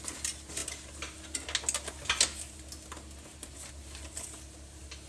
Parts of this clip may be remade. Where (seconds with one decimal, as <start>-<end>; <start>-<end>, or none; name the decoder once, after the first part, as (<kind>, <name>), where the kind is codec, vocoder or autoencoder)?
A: none